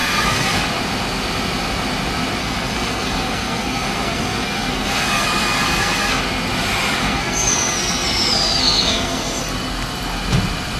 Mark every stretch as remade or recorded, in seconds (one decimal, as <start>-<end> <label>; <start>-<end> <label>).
0.0-0.6 remade; 0.6-2.4 recorded; 2.4-6.2 remade; 6.2-7.0 recorded; 7.0-9.4 remade; 9.4-10.8 recorded